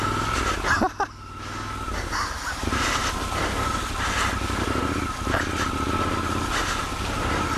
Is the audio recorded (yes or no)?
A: yes